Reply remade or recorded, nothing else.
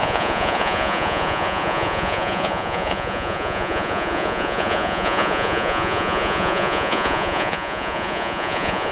remade